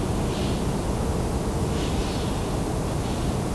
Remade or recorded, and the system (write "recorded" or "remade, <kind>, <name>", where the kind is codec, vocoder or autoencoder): recorded